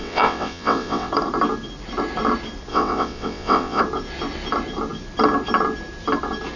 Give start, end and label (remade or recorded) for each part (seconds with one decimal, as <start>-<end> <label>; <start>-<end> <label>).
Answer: 0.0-1.1 remade; 1.1-2.7 recorded; 2.7-3.8 remade; 3.8-6.6 recorded